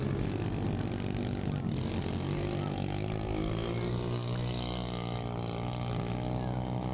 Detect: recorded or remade recorded